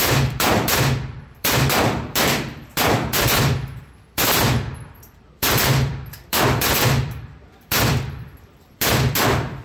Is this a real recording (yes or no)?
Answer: no